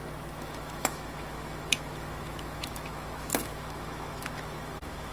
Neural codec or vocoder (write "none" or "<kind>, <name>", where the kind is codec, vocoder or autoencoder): autoencoder, DAC-VAE